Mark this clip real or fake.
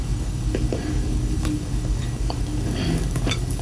fake